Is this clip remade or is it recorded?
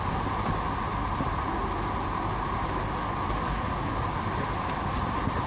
recorded